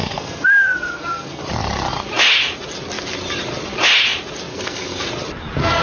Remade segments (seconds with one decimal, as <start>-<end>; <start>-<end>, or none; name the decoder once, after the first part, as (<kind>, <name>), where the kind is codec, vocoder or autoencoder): 0.0-1.4 (codec, SNAC); 4.5-5.1

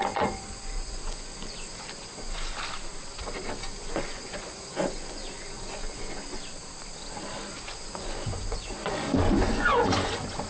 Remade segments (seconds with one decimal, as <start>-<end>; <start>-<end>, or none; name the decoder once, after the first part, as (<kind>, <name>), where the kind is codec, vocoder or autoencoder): 0.0-2.5 (vocoder, Vocos); 3.6-6.2; 7.5-10.5

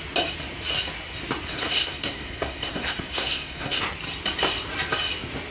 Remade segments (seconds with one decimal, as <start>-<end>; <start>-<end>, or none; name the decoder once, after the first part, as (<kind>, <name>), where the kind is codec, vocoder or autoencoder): 1.5-3.8 (codec, SNAC)

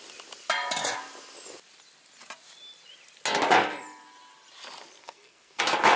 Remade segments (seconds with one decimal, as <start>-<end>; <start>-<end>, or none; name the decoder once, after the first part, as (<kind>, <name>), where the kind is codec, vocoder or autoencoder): 5.0-5.6 (codec, SNAC)

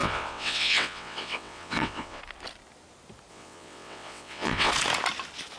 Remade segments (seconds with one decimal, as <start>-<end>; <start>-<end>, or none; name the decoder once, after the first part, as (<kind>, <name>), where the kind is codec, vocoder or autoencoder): 0.0-2.2 (vocoder, WaveNeXt); 3.3-4.7

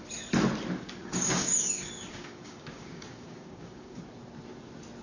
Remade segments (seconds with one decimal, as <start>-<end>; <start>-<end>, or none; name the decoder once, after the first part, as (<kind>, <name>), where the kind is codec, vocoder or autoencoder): 1.0-4.0 (codec, DAC)